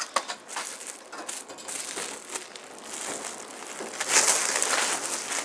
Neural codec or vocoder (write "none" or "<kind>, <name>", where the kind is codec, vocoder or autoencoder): none